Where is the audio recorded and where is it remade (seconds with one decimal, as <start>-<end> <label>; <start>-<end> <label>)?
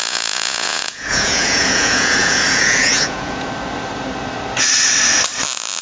0.0-3.5 remade; 3.5-5.8 recorded